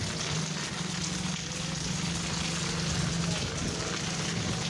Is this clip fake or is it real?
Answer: real